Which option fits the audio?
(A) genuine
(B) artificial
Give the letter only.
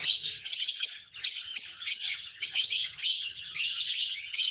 B